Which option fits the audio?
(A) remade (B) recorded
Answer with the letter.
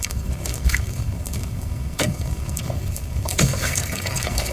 A